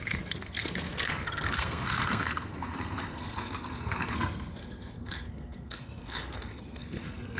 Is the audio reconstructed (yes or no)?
yes